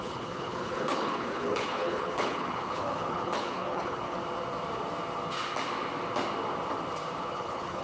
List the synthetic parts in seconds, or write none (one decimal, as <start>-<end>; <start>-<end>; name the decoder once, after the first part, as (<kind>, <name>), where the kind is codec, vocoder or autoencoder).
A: 0.0-4.2 (codec, HILCodec); 7.2-7.8